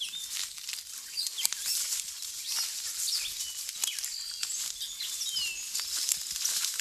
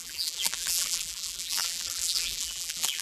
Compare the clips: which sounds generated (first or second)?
second